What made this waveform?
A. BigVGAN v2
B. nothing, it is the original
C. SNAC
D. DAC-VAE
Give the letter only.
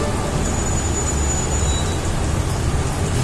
B